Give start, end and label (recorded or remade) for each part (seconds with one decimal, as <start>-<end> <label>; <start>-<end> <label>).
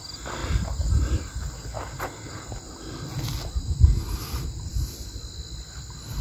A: 0.0-0.4 recorded; 0.4-1.2 remade; 1.2-6.2 recorded